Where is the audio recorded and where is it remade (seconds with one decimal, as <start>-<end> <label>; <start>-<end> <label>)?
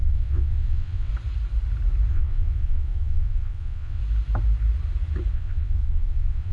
0.0-1.1 remade; 1.1-2.1 recorded; 2.1-4.0 remade; 4.0-5.3 recorded; 5.3-6.5 remade